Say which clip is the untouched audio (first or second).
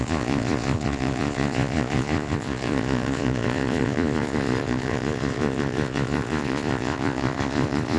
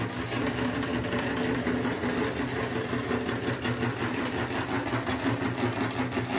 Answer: second